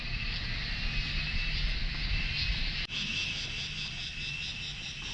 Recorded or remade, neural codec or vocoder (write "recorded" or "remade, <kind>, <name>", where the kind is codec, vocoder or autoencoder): recorded